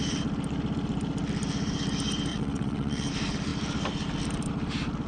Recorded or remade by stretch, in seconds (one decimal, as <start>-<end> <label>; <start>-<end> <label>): 0.0-2.3 recorded; 2.3-3.1 remade; 3.1-5.1 recorded